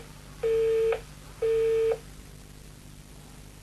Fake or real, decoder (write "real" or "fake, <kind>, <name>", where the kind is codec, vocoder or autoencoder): real